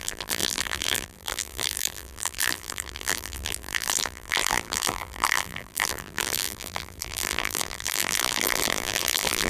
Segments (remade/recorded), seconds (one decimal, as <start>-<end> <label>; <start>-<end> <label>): 0.0-9.5 remade